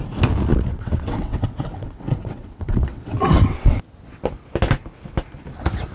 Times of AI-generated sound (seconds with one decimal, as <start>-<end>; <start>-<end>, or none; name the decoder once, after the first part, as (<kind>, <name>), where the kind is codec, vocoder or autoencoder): 0.5-3.8 (vocoder, WaveNeXt)